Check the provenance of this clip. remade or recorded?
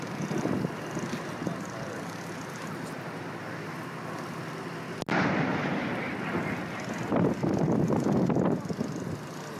recorded